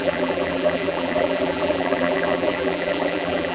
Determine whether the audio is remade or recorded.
remade